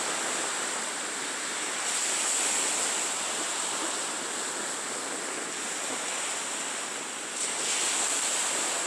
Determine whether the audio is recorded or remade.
recorded